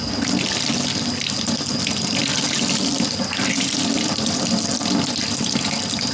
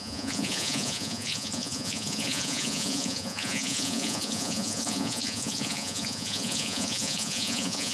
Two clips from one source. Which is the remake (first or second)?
second